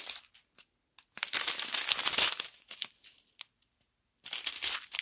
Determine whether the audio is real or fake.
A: real